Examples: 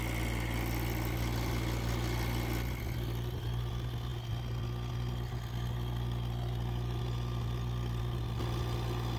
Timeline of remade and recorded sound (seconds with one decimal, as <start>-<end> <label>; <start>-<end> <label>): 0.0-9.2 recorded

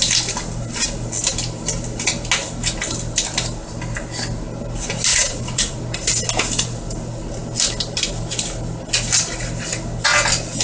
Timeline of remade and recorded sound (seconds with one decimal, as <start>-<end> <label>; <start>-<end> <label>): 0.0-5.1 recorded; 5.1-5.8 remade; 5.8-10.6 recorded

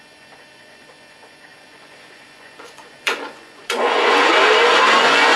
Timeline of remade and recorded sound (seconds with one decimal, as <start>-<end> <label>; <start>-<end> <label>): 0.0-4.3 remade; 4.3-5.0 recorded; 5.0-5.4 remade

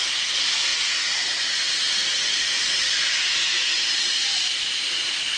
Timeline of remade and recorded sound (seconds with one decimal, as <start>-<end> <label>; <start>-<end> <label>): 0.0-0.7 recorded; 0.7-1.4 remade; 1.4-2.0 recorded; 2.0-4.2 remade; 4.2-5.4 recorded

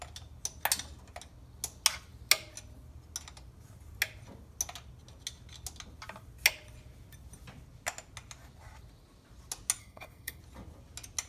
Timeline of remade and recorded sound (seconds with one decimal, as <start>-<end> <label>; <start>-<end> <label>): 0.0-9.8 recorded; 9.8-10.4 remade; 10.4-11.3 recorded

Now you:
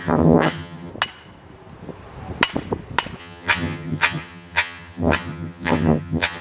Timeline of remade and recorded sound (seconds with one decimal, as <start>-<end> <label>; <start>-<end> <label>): 0.0-0.9 remade; 0.9-3.2 recorded; 3.2-6.4 remade